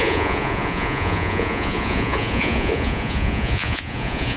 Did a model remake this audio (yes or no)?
yes